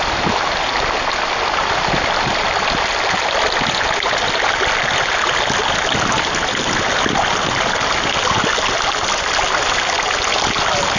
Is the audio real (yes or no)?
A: yes